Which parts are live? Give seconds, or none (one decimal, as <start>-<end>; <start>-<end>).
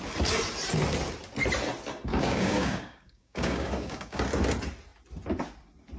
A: 0.0-2.1; 4.2-6.0